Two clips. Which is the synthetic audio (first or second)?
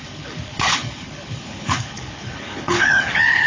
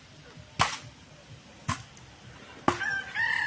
first